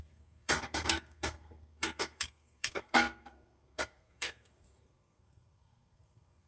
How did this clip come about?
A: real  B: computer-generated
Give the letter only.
B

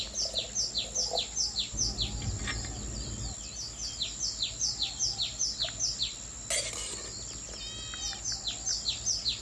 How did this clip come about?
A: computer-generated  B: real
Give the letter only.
B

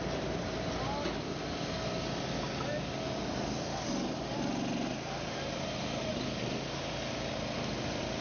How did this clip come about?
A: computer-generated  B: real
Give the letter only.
B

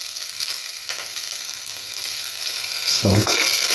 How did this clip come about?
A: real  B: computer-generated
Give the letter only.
B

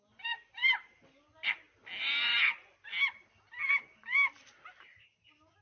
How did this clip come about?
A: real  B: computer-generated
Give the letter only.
A